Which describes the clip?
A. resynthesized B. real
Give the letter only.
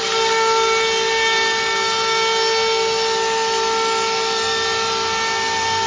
B